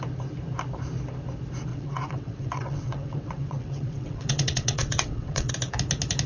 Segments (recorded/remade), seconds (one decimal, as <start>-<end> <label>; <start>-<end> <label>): 0.0-1.7 recorded; 1.7-5.5 remade; 5.5-6.3 recorded